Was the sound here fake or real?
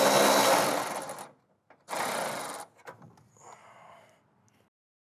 real